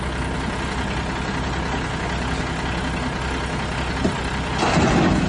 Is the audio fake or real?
real